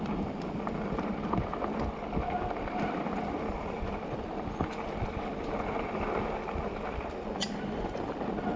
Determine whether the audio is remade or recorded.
recorded